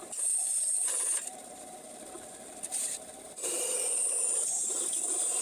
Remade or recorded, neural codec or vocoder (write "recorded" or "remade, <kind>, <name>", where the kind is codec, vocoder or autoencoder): remade, vocoder, BigVGAN v2